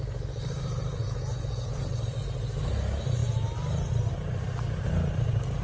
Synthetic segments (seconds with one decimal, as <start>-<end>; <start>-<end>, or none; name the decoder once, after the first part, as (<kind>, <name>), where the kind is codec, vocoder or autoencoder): 1.0-1.8 (vocoder, Vocos)